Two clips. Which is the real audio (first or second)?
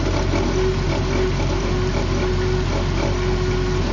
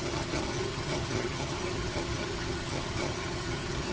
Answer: first